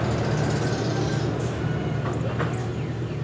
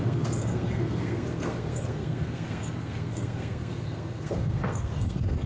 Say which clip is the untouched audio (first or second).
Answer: first